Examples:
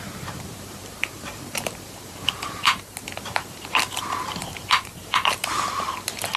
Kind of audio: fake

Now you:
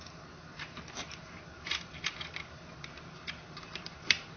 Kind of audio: fake